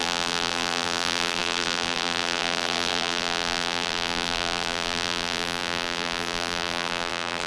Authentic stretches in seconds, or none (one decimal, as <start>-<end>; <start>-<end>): none